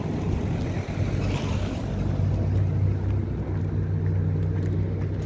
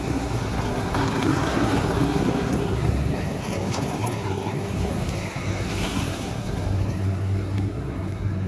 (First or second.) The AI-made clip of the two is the second